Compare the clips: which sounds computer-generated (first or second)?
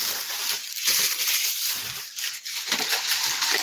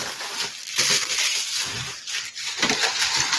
first